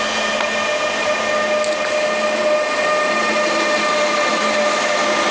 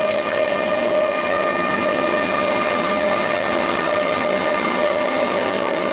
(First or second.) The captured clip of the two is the first